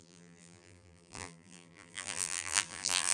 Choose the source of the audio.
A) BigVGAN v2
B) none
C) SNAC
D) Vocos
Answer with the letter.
A